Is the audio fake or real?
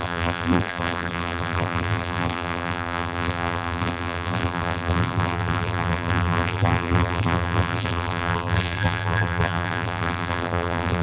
fake